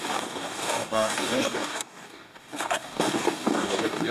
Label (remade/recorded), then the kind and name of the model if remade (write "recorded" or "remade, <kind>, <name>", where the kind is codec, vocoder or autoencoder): remade, codec, DAC